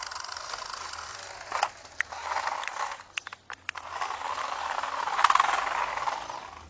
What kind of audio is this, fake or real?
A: real